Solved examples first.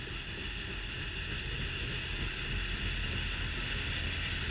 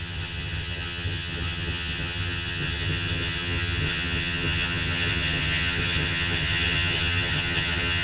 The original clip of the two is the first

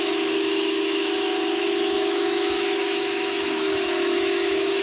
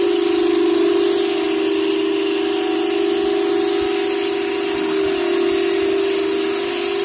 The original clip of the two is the second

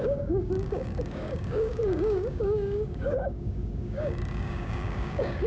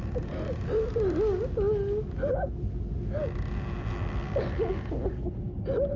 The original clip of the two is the second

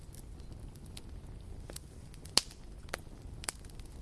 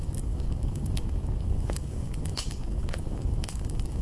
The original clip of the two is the first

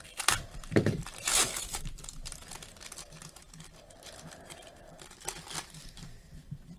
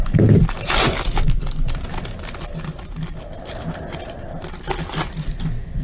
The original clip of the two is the second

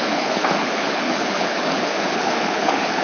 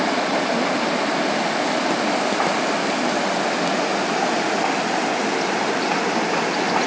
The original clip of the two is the second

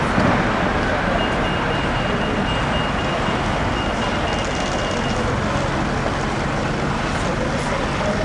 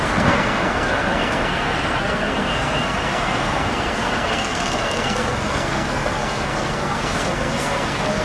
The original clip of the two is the first